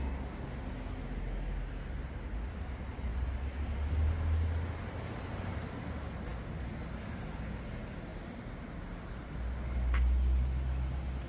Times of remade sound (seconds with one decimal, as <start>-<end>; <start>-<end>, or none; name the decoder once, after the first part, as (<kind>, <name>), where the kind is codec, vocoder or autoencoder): none